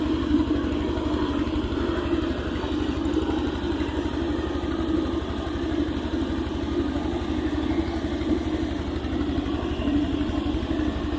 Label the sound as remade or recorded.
recorded